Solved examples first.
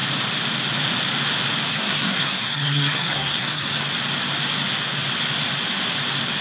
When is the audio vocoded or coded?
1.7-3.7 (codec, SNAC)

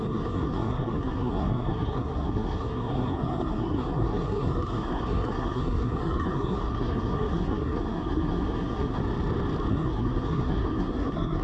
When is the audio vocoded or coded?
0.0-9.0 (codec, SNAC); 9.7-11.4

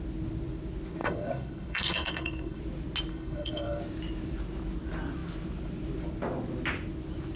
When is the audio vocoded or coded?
1.0-2.6 (codec, SNAC); 3.1-3.8

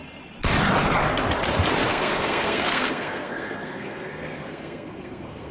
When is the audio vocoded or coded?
1.9-5.5 (codec, SNAC)